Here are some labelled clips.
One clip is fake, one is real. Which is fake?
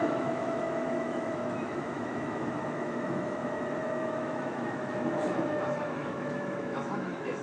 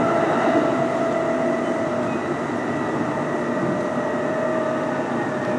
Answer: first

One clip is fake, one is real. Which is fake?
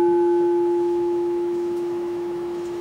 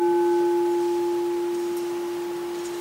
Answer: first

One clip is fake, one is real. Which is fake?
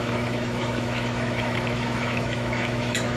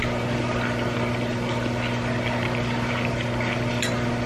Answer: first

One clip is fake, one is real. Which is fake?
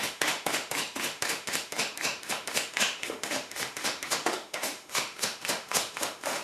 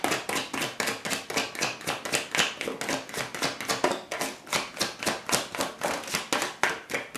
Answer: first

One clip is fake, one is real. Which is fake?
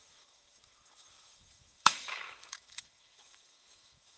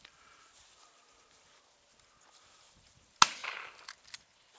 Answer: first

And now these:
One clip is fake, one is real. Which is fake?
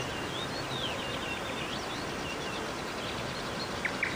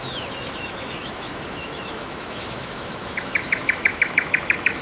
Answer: second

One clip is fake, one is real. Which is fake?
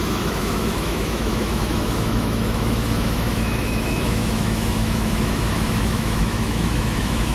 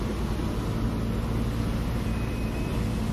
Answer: first